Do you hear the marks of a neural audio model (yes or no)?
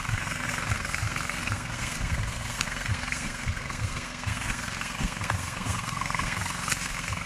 yes